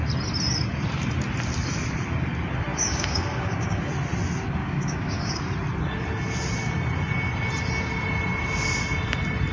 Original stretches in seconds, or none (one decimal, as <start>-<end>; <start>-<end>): 0.0-2.7; 3.9-4.6; 5.4-9.5